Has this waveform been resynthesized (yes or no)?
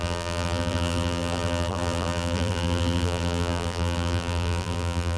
yes